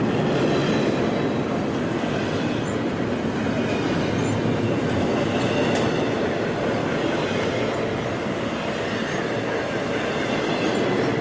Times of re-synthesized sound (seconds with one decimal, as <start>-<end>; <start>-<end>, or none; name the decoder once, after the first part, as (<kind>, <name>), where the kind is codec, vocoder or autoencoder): none